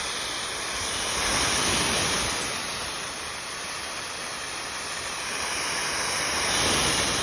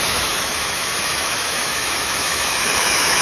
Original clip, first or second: first